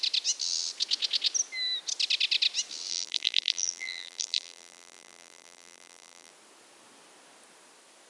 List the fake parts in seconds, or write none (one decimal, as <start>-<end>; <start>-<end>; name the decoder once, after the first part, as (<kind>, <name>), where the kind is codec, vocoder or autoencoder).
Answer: 2.9-6.3 (vocoder, BigVGAN v2)